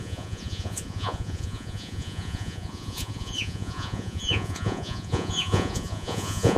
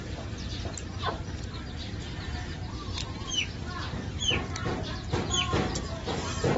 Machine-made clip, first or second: first